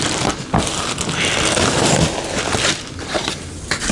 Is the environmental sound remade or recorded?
recorded